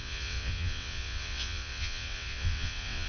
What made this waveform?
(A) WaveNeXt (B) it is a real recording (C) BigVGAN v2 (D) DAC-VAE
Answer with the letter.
A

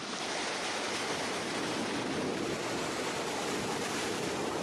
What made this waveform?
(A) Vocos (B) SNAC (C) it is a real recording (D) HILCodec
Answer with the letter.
C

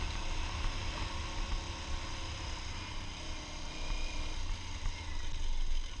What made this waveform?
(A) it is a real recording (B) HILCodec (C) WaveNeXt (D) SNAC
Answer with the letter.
A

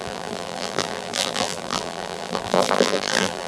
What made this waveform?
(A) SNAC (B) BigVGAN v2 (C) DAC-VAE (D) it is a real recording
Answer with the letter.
B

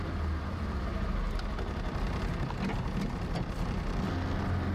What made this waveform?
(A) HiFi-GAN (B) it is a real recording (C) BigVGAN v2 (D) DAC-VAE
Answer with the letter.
B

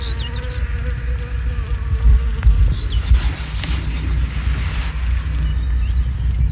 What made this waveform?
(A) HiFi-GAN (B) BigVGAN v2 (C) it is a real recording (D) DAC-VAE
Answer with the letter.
C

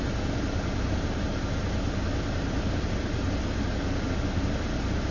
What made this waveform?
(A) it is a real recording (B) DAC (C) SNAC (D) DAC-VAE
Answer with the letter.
A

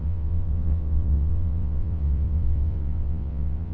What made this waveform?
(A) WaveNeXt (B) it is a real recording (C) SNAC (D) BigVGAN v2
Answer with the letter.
A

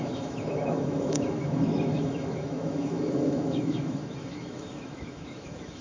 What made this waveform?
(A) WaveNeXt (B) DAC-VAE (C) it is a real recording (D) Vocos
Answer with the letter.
B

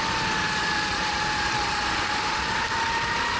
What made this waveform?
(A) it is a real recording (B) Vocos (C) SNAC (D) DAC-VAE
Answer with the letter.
A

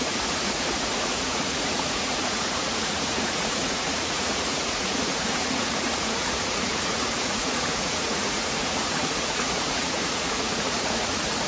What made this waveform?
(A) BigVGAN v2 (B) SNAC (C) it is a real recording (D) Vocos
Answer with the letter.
D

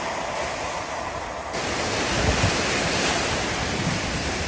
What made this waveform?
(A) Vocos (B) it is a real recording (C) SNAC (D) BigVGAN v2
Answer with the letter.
B